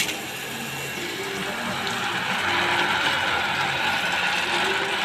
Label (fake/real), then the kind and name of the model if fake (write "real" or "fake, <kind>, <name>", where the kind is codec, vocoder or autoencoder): real